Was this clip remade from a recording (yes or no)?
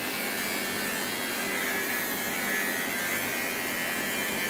no